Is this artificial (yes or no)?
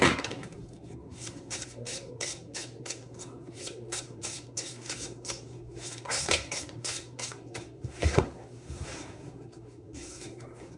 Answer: yes